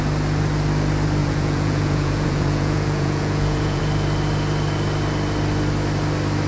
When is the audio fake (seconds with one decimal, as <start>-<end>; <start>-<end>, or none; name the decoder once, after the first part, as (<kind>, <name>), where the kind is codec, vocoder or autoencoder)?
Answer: 1.2-3.8 (vocoder, Vocos)